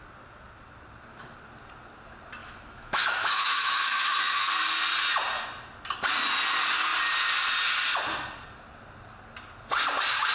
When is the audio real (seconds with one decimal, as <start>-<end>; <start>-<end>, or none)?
0.0-2.4; 4.5-10.3